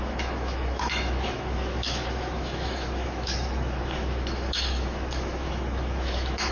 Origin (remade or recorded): remade